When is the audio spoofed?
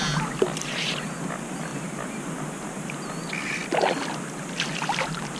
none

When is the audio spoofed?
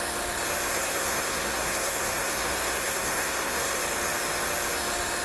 0.7-3.8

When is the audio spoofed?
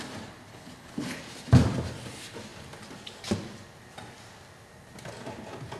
0.5-1.2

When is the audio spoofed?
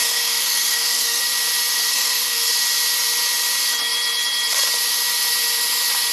0.0-1.2; 1.9-2.5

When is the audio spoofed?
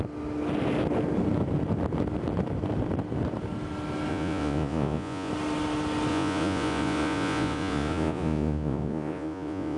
4.1-5.3; 6.1-9.8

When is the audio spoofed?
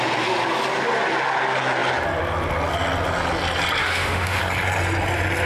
3.8-4.4